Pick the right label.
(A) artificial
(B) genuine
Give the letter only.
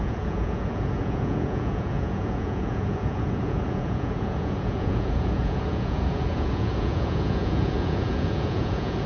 A